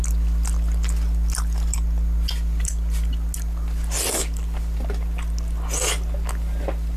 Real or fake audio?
real